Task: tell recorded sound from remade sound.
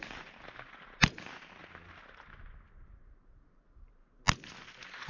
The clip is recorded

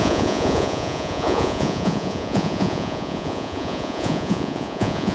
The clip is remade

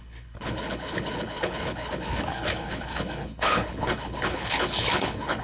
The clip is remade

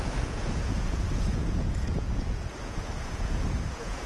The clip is remade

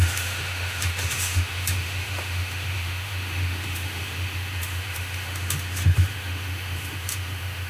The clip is remade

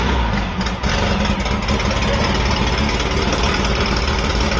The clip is recorded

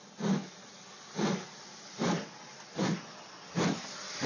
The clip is recorded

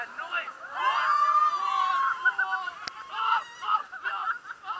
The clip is recorded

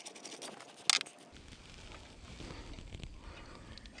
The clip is recorded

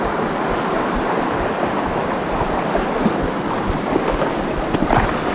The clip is recorded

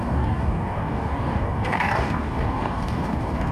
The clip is remade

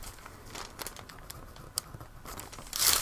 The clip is remade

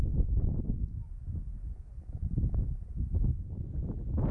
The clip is recorded